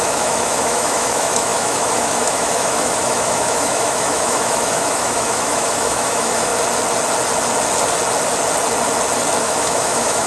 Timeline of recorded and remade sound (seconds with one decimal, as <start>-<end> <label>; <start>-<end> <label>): 0.0-6.5 remade; 6.5-9.4 recorded; 9.4-10.3 remade